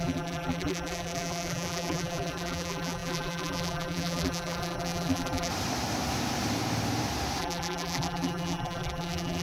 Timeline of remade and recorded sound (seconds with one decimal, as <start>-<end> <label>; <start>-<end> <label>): 0.0-5.5 remade; 5.5-7.4 recorded; 7.4-9.4 remade